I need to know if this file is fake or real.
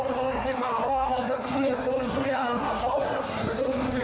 fake